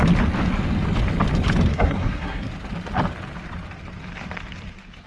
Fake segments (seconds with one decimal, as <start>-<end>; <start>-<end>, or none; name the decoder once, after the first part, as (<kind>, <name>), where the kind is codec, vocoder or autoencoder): 1.7-2.5 (codec, SNAC)